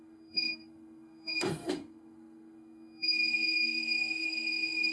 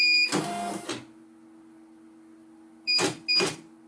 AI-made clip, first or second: first